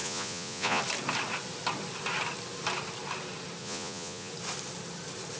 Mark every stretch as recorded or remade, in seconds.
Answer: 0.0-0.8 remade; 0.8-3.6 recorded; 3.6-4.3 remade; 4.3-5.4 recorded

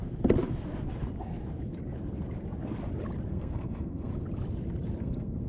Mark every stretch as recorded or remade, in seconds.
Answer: 0.0-3.3 recorded; 3.3-4.1 remade; 4.1-5.0 recorded; 5.0-5.5 remade

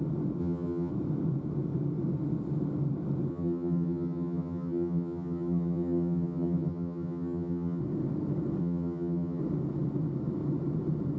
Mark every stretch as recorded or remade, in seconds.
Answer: 0.0-0.4 recorded; 0.4-0.9 remade; 0.9-3.3 recorded; 3.3-7.8 remade; 7.8-8.6 recorded; 8.6-9.4 remade; 9.4-11.2 recorded

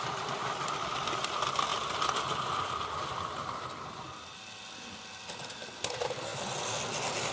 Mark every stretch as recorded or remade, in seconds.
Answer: 0.0-7.3 recorded

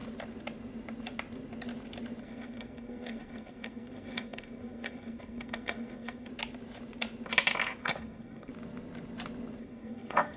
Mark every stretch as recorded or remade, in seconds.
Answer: 0.0-2.2 recorded; 2.2-6.3 remade; 6.3-7.8 recorded; 7.8-8.5 remade; 8.5-9.6 recorded; 9.6-10.4 remade